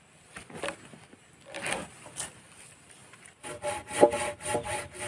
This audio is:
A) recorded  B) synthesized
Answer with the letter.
A